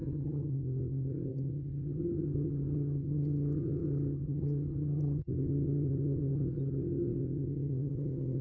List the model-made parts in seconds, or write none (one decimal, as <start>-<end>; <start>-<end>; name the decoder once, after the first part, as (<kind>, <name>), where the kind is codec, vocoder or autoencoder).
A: 0.0-8.4 (vocoder, HiFi-GAN)